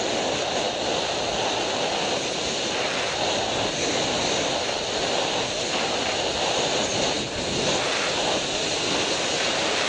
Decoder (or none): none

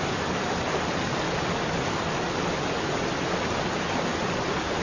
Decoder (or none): none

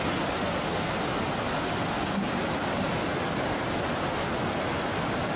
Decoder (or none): none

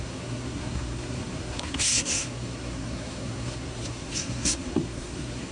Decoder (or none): codec, SNAC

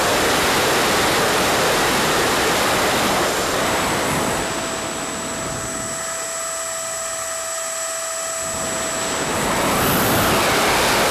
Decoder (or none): none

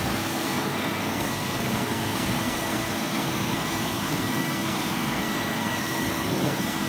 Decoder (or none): codec, SNAC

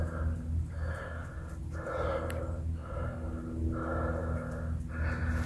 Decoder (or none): none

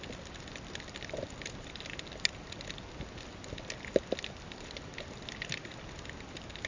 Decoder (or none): none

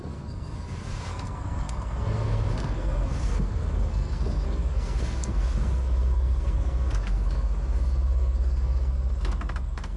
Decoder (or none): codec, SNAC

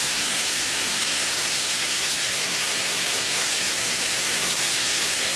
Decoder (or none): codec, SNAC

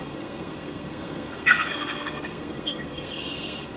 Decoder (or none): codec, SNAC